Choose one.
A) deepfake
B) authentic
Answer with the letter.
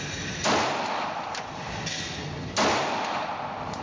B